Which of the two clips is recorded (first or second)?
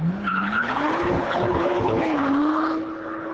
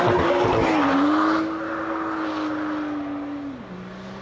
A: second